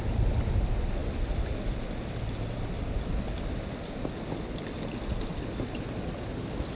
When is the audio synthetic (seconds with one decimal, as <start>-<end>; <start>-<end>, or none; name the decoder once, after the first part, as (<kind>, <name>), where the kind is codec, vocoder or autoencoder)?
none